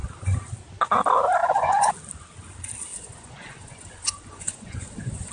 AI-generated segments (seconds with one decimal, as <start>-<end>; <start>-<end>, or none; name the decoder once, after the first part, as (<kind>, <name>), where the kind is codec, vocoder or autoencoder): 1.4-1.9 (vocoder, Vocos); 2.9-5.3